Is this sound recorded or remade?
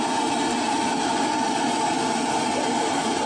recorded